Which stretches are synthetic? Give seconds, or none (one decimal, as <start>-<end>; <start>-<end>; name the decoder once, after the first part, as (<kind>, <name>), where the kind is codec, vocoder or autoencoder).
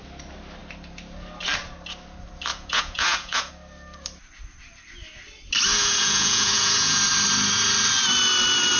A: 2.5-3.5 (vocoder, Vocos); 5.7-7.0